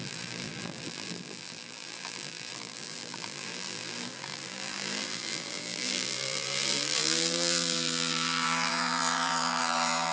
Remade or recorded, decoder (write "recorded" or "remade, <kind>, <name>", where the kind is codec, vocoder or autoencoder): remade, vocoder, BigVGAN v2